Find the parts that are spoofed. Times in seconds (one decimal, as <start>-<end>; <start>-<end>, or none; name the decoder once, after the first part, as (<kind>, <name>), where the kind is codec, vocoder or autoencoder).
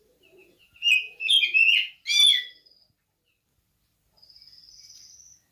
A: 0.4-1.9 (vocoder, Vocos)